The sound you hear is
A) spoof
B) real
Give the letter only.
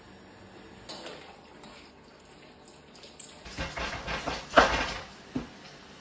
B